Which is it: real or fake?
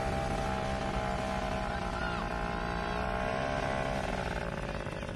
real